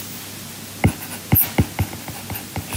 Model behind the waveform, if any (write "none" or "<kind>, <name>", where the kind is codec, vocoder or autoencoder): none